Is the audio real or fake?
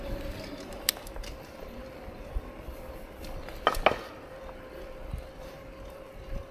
real